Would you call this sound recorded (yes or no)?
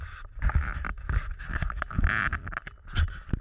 yes